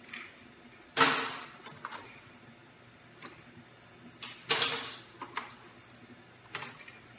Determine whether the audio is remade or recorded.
recorded